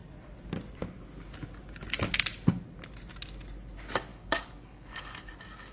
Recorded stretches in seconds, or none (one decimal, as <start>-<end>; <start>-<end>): 0.0-4.1; 5.3-5.7